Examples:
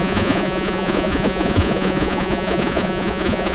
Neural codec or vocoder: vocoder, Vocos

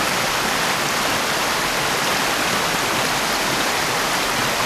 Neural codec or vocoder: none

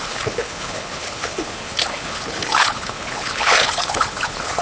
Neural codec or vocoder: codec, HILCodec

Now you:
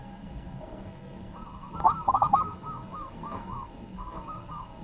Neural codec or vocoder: codec, SNAC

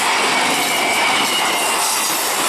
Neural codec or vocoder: none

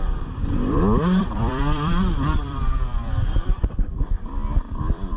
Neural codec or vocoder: vocoder, BigVGAN v2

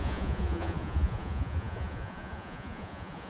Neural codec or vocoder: vocoder, Vocos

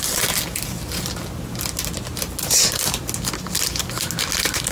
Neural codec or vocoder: none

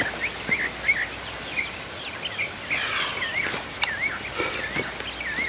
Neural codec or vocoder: none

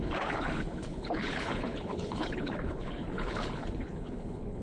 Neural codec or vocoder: codec, HILCodec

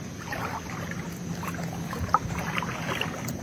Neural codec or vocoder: none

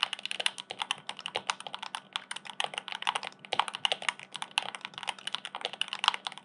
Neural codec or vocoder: none